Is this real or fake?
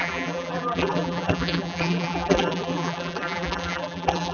fake